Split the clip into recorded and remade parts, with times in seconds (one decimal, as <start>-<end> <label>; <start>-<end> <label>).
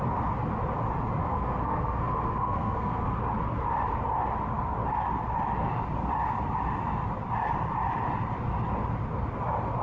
0.0-1.2 recorded; 1.2-3.2 remade; 3.2-9.8 recorded